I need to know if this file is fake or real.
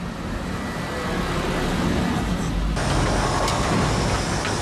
real